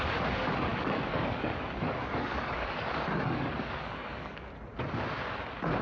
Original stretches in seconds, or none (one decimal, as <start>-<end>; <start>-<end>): 4.5-5.8